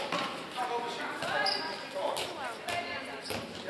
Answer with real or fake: real